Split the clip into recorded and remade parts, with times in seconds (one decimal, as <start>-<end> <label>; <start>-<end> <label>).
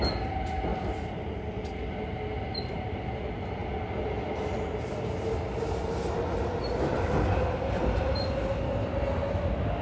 0.0-9.8 recorded